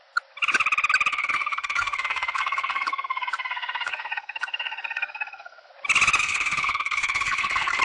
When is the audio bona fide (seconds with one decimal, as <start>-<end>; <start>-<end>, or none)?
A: 0.0-1.1; 5.7-6.2